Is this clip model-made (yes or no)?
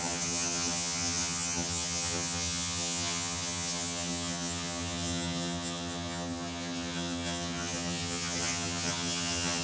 yes